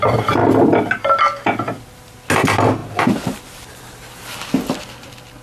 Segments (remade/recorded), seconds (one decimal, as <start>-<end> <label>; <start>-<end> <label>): 0.0-5.4 recorded